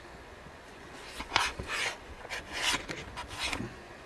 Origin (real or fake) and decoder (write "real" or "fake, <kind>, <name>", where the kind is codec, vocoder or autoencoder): fake, vocoder, Vocos